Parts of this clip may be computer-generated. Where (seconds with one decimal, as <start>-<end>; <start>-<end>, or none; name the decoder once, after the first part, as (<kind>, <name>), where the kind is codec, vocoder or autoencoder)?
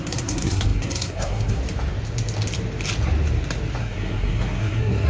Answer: 0.0-1.6 (codec, SNAC); 3.8-5.1